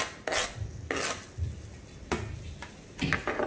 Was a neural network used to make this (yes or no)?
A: no